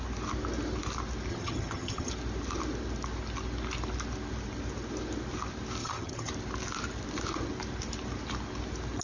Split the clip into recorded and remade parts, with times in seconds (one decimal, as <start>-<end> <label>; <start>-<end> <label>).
0.0-1.3 recorded; 1.3-2.1 remade; 2.1-5.8 recorded; 5.8-6.3 remade; 6.3-9.0 recorded